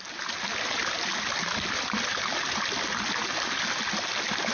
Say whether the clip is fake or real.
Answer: real